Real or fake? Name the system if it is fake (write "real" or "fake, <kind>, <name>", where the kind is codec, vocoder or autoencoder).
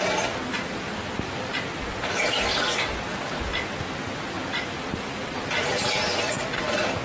real